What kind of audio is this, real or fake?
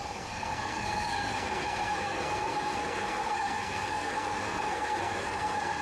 fake